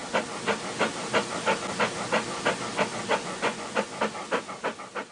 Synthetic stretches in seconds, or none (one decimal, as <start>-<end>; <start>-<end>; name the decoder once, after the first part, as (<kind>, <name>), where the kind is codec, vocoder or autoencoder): 3.1-3.8 (vocoder, Vocos)